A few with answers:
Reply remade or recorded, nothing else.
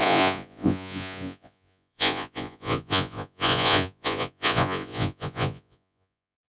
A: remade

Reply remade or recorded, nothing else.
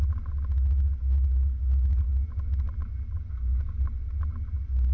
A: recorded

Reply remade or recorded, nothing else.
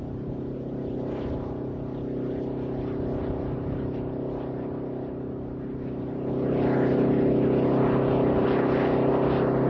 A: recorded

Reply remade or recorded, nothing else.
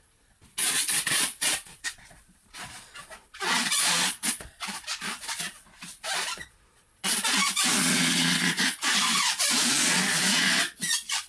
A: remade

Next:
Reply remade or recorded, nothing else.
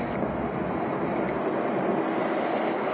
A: recorded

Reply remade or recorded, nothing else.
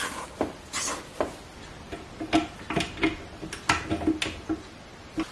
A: recorded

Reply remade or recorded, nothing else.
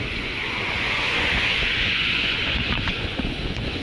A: remade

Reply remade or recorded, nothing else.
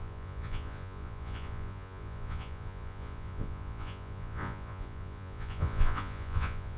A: remade